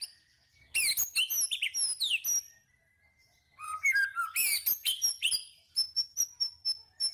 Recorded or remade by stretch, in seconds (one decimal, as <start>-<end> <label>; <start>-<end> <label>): 0.0-2.8 recorded; 2.8-6.2 remade; 6.2-7.1 recorded